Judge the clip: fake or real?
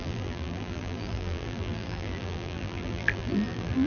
fake